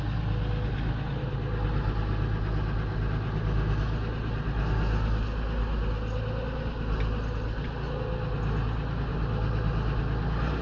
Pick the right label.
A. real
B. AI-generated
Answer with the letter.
A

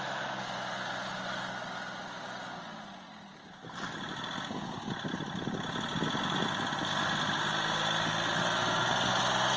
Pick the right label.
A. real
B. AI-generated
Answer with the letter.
A